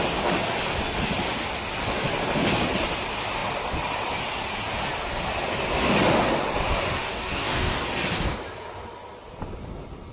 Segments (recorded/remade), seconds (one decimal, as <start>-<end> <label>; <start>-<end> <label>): 0.0-7.0 recorded; 7.0-7.8 remade; 7.8-10.1 recorded